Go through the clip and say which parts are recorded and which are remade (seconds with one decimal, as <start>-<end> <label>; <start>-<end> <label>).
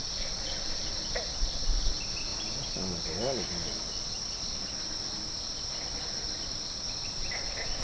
0.0-7.8 recorded